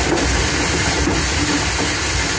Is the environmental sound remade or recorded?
recorded